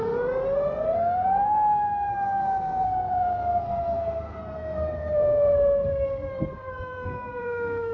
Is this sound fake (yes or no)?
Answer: yes